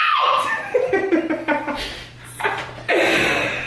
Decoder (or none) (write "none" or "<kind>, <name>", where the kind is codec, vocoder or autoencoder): vocoder, BigVGAN v2